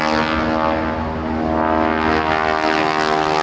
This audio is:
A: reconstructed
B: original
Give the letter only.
B